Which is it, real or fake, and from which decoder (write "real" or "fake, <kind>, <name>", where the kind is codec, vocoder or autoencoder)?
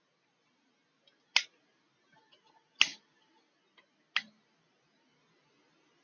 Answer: real